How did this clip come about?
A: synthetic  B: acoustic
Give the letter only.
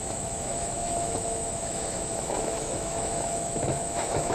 A